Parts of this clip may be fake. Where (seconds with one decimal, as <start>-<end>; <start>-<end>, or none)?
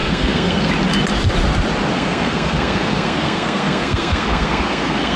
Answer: 0.0-0.7; 1.9-5.2